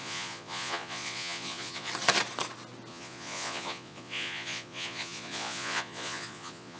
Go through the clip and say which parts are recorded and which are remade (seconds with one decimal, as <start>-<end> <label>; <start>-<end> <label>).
0.0-1.9 remade; 1.9-2.9 recorded; 2.9-6.8 remade